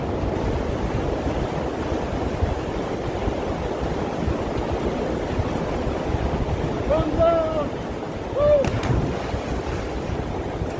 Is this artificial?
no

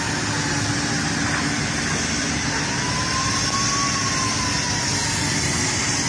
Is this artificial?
no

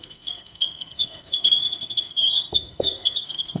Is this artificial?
yes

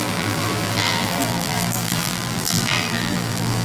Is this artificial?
yes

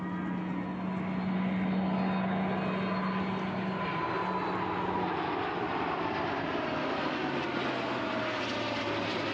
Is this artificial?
no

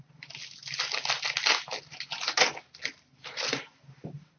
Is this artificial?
no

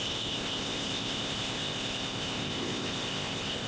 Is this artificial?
yes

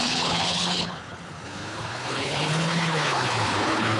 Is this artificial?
yes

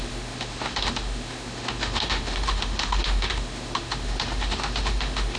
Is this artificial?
yes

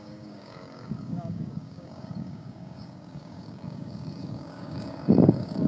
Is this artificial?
yes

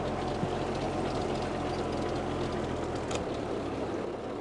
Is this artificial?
no